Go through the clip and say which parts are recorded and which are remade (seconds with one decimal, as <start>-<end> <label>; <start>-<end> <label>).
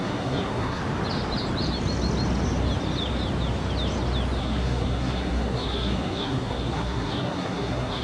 0.0-0.8 remade; 0.8-4.4 recorded; 4.4-8.0 remade